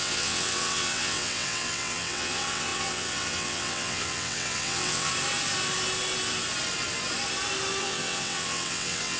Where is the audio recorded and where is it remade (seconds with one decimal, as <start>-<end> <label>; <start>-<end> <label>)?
0.0-5.1 remade; 5.1-7.8 recorded; 7.8-9.2 remade